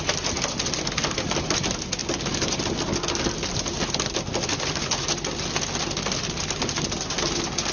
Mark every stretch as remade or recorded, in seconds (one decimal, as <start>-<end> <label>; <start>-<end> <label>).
0.0-7.7 recorded